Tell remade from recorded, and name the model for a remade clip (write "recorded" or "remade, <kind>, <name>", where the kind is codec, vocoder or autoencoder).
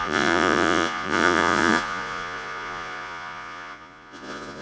remade, vocoder, Vocos